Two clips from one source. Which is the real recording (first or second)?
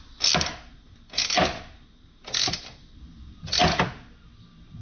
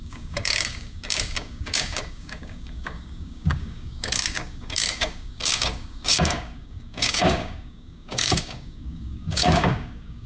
first